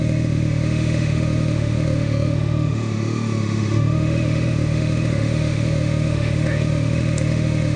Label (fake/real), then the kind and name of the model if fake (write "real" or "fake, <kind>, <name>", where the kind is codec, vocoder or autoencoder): fake, autoencoder, DAC-VAE